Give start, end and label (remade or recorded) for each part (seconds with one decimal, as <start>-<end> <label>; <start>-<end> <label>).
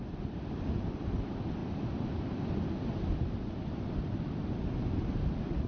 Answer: 0.0-5.7 recorded